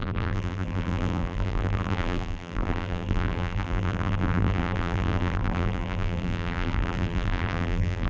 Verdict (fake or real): fake